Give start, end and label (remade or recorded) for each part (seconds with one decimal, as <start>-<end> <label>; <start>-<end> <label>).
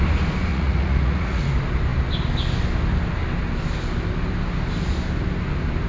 0.0-0.5 recorded; 0.5-1.5 remade; 1.5-5.9 recorded